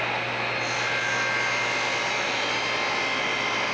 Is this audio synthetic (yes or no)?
no